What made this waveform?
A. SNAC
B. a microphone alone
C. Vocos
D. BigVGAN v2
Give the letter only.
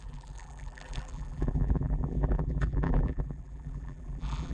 D